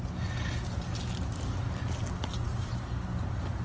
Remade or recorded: recorded